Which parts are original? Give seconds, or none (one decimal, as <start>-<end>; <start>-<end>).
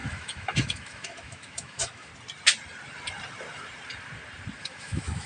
2.1-4.6